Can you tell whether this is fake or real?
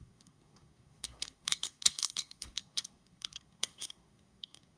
fake